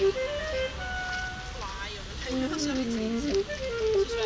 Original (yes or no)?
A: yes